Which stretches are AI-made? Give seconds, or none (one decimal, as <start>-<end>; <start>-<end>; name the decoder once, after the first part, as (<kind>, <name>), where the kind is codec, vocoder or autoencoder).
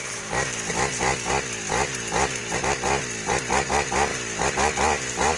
none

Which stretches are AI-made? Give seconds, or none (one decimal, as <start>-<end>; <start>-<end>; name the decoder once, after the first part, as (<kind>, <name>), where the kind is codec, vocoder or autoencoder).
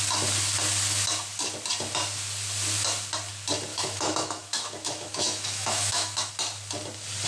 3.7-6.3 (autoencoder, DAC-VAE)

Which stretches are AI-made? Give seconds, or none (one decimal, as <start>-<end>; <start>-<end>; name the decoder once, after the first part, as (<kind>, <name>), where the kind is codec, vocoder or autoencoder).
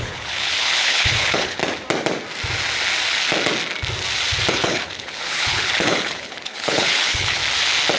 0.0-1.6 (codec, HILCodec); 4.5-7.4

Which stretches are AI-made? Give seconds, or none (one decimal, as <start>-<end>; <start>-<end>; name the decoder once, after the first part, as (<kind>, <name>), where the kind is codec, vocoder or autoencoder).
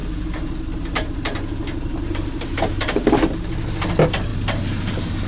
0.0-3.1 (vocoder, BigVGAN v2); 4.3-5.3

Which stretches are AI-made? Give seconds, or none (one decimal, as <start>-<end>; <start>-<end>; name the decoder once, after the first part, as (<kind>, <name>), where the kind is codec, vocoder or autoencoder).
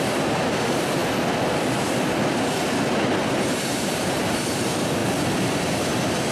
0.0-1.0 (vocoder, BigVGAN v2); 3.4-5.0; 5.5-6.3